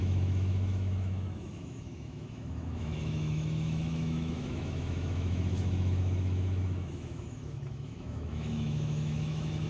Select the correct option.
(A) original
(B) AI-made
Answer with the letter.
B